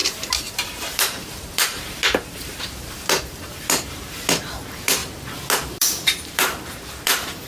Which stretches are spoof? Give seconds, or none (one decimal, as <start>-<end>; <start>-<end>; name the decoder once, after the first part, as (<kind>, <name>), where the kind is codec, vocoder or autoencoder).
0.0-5.0 (vocoder, BigVGAN v2); 5.6-7.5